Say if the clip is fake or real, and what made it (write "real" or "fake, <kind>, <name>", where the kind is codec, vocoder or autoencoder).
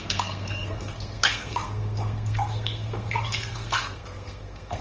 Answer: fake, codec, SNAC